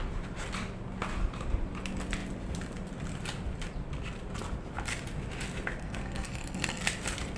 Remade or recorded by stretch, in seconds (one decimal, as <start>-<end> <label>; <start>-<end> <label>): 0.0-5.8 recorded; 5.8-6.8 remade; 6.8-7.4 recorded